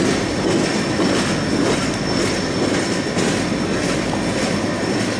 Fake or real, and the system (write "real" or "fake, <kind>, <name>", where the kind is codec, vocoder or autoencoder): real